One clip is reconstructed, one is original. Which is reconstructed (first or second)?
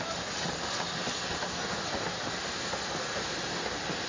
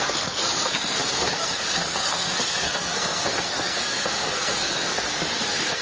second